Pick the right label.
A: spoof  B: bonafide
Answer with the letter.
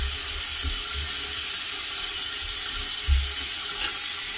B